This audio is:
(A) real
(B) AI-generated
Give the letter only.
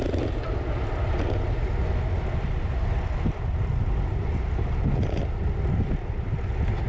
A